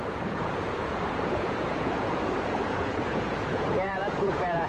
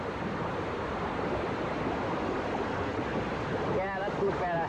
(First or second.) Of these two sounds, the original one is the second